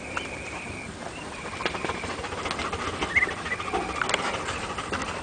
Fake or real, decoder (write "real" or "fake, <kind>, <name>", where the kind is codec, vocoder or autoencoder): real